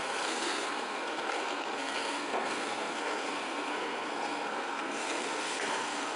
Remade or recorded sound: remade